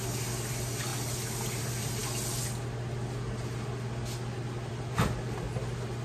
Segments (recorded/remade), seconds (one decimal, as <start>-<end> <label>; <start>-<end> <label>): 0.0-6.0 recorded